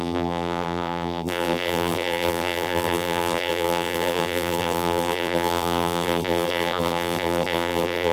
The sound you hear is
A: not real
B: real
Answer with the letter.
A